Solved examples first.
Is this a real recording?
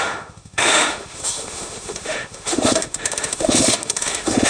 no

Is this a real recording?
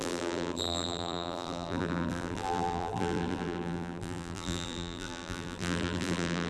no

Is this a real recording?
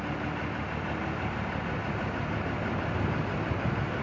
yes